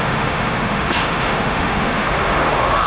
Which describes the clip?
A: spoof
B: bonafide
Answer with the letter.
A